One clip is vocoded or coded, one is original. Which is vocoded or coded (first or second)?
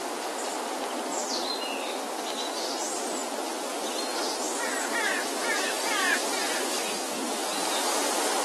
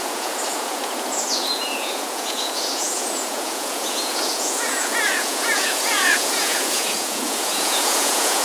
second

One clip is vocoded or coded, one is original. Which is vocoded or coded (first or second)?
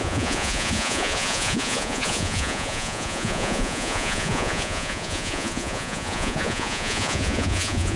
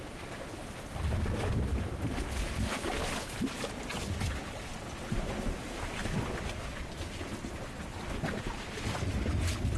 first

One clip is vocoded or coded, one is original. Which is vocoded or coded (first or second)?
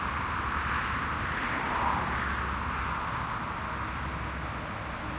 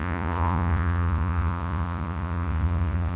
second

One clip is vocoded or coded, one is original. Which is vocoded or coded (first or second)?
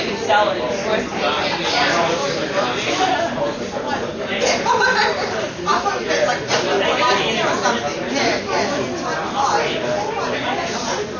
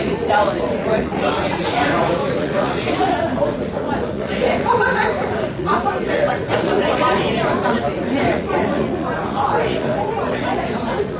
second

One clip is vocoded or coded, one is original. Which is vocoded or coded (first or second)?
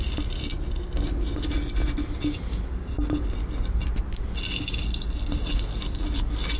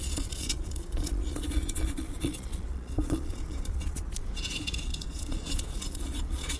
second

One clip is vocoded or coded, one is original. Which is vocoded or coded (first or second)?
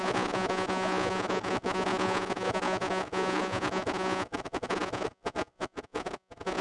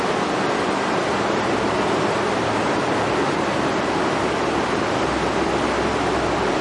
first